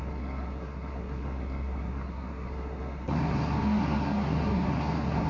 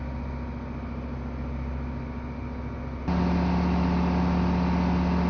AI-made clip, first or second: first